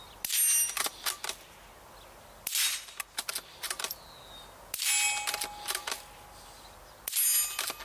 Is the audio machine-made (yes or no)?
no